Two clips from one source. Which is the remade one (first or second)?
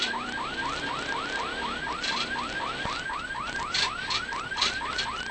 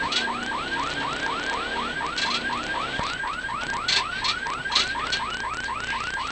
first